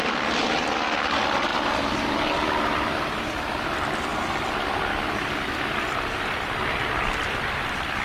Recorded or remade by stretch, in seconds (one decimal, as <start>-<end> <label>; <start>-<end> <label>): 0.0-8.0 recorded